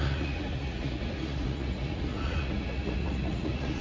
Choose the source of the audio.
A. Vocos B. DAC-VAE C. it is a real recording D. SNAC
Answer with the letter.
A